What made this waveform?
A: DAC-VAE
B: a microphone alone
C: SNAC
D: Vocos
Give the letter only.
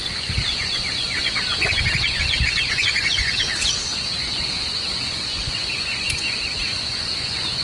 D